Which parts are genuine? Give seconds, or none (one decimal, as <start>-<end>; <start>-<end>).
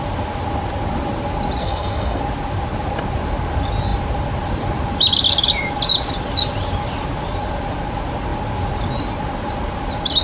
0.0-1.6; 2.2-10.2